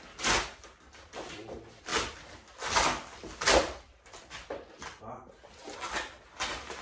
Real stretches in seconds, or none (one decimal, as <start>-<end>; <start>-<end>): 0.0-1.9; 5.0-6.8